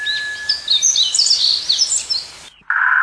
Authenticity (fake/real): real